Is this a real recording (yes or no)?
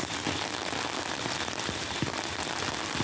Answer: yes